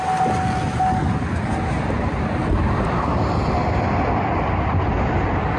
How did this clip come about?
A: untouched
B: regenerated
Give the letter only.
A